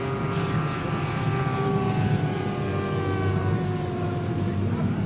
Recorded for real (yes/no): yes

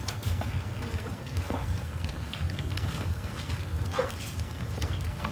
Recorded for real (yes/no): no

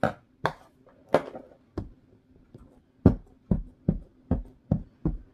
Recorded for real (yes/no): yes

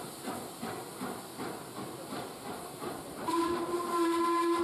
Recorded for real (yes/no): yes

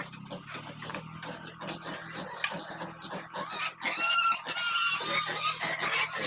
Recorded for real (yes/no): yes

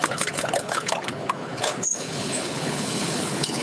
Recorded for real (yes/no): no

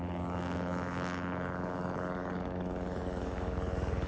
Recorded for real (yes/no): no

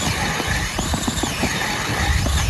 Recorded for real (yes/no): yes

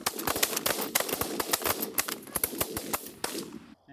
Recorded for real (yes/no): yes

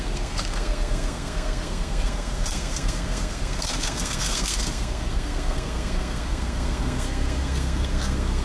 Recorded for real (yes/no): no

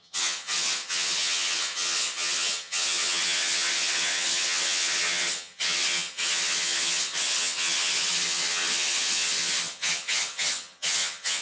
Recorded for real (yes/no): no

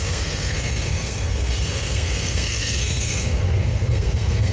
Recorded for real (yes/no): no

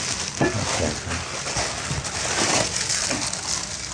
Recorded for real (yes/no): yes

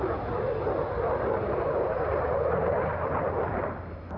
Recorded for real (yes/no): yes